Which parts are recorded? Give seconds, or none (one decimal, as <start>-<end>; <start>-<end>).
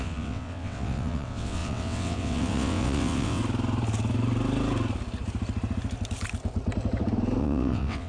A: 3.4-7.4